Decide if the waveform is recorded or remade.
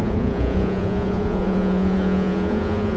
remade